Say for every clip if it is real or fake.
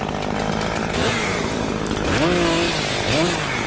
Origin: real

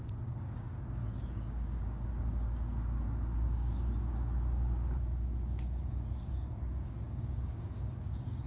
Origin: fake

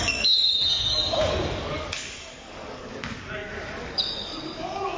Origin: fake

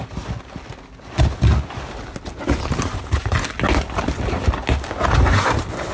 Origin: real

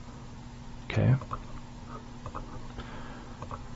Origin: real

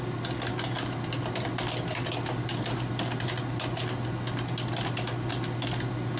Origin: real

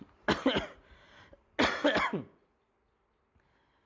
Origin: real